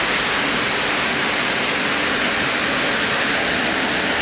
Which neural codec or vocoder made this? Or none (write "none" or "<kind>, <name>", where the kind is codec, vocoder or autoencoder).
none